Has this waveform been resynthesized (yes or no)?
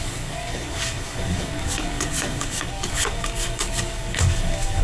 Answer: yes